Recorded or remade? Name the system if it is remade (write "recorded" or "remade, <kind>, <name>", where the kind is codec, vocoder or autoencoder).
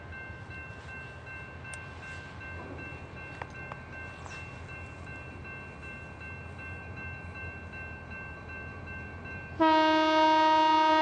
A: recorded